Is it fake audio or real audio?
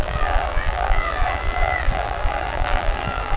fake